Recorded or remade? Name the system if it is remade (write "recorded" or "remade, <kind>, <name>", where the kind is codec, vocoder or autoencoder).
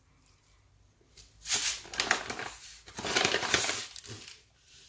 recorded